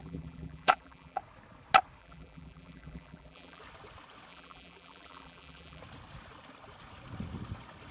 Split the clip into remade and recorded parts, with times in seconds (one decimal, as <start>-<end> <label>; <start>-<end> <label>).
0.0-1.2 remade; 1.2-2.0 recorded; 2.0-3.6 remade; 3.6-4.3 recorded; 4.3-5.8 remade; 5.8-7.9 recorded